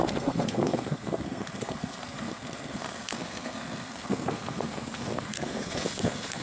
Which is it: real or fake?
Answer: fake